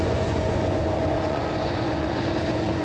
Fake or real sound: fake